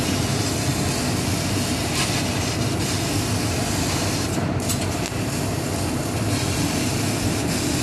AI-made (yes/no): no